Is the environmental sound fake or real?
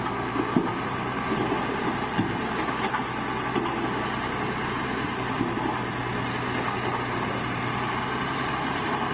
real